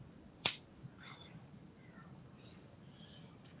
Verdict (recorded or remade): remade